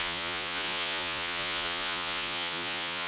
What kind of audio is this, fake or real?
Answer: fake